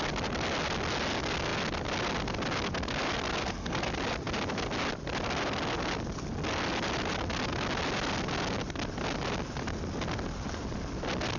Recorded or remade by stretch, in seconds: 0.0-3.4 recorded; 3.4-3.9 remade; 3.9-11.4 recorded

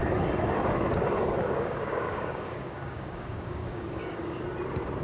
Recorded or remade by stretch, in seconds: 0.0-1.4 recorded; 1.4-4.4 remade; 4.4-5.0 recorded

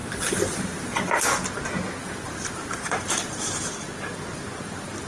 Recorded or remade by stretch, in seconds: 0.0-1.2 remade; 1.2-2.0 recorded; 2.0-3.3 remade; 3.3-5.1 recorded